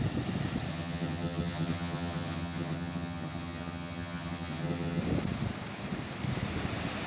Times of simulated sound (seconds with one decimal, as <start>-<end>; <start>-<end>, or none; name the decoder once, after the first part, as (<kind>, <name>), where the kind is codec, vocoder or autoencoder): 0.7-5.0 (vocoder, HiFi-GAN)

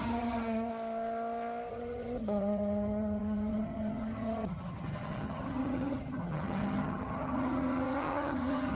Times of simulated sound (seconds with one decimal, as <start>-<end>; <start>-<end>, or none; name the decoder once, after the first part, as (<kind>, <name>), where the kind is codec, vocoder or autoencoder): 0.0-0.7 (vocoder, HiFi-GAN); 1.7-8.8